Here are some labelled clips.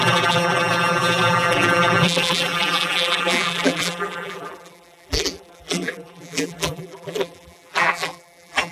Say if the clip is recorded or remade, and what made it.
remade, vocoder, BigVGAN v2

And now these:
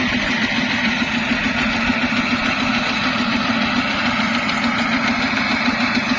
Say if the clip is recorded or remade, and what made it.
recorded